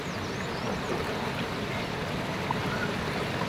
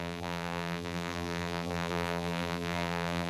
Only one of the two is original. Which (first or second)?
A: first